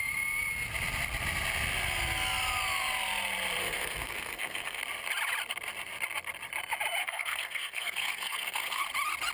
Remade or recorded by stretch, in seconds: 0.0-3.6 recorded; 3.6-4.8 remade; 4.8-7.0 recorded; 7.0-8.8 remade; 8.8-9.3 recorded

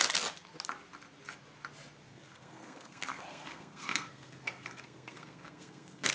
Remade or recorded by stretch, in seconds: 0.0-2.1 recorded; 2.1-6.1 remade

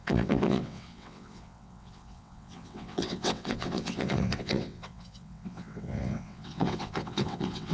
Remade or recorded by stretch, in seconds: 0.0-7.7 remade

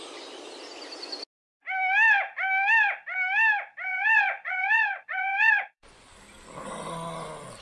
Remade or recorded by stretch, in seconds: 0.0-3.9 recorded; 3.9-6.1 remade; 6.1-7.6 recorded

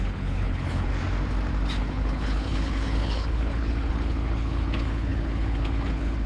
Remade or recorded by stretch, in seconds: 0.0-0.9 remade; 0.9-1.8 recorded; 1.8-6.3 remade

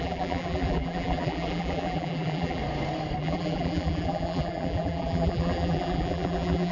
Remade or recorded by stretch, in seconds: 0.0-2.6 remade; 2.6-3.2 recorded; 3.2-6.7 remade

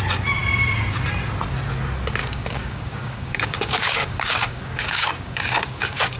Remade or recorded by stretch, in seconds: 0.0-2.2 recorded; 2.2-6.2 remade